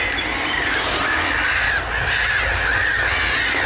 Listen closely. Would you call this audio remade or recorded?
recorded